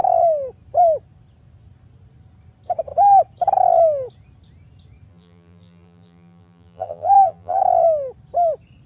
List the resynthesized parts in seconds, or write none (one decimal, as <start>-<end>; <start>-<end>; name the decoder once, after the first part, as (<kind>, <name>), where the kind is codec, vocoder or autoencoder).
5.1-7.6 (vocoder, BigVGAN v2)